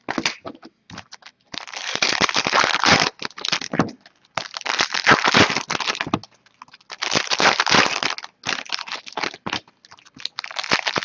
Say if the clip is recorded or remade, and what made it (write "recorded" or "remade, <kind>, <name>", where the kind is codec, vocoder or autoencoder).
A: recorded